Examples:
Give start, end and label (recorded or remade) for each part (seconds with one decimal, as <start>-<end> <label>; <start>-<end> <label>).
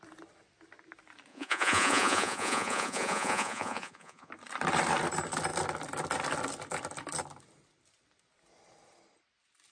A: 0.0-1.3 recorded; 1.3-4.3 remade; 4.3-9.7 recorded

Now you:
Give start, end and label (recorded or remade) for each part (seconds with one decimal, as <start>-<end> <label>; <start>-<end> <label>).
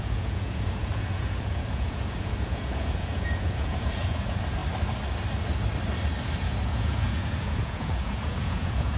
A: 0.0-4.6 remade; 4.6-6.4 recorded; 6.4-9.0 remade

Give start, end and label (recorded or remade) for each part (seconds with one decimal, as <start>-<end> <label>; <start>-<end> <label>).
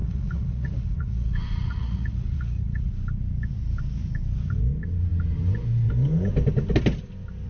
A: 0.0-2.9 remade; 2.9-7.5 recorded